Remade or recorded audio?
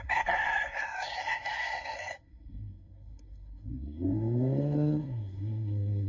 remade